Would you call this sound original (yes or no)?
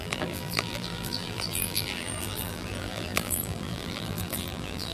no